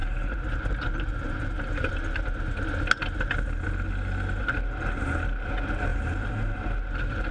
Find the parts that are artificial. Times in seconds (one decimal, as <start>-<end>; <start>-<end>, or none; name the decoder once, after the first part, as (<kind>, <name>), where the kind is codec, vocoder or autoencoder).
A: 0.0-1.9 (vocoder, BigVGAN v2); 5.9-6.7